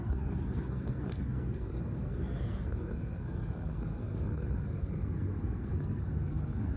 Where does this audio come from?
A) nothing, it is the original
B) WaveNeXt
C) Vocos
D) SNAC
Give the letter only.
D